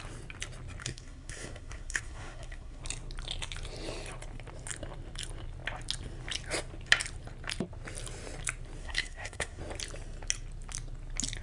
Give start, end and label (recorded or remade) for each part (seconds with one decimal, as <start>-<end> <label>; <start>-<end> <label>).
0.0-0.8 recorded; 0.8-2.8 remade; 2.8-8.8 recorded; 8.8-9.6 remade; 9.6-11.4 recorded